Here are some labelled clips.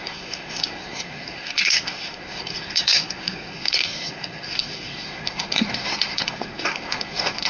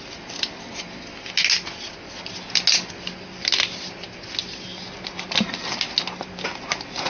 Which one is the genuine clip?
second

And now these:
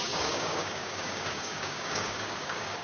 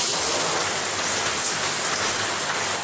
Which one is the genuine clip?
second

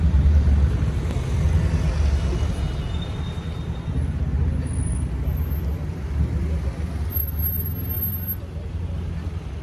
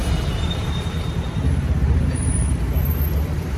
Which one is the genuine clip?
first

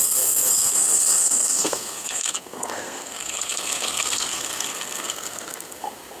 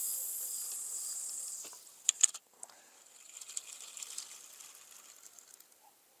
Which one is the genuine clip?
second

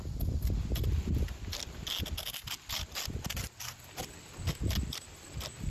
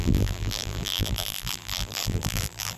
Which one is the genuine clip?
first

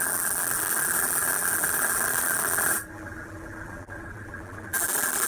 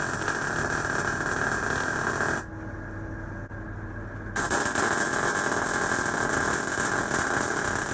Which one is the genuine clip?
second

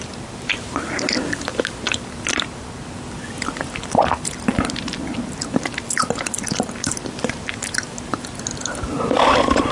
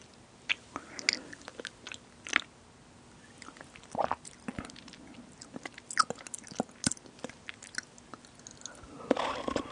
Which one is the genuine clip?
second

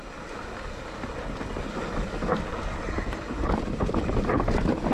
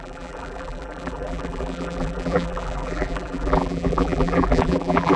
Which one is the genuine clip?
first